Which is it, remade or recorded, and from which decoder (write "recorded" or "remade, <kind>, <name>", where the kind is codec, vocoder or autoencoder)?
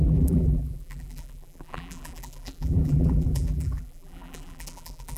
remade, vocoder, BigVGAN v2